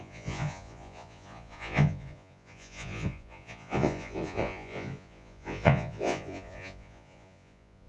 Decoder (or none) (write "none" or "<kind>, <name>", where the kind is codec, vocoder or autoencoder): vocoder, Vocos